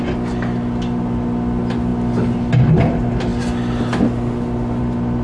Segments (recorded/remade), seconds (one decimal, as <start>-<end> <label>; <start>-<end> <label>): 0.0-5.2 recorded